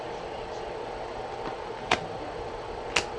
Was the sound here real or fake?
real